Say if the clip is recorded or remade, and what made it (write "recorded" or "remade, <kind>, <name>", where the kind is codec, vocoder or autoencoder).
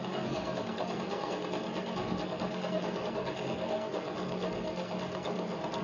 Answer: remade, codec, SNAC